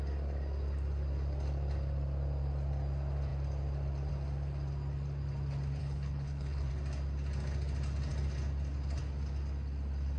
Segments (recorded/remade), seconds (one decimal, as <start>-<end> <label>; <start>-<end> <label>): 0.0-5.8 recorded; 5.8-6.7 remade; 6.7-10.2 recorded

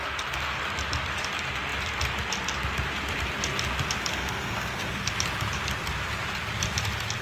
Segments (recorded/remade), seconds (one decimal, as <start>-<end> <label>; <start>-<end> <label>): 0.0-4.1 recorded; 4.1-5.1 remade; 5.1-7.2 recorded